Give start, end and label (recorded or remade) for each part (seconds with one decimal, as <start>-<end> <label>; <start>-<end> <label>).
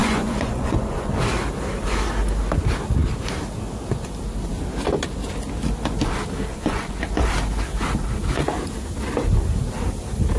0.0-1.1 remade; 1.1-6.5 recorded; 6.5-7.0 remade; 7.0-10.4 recorded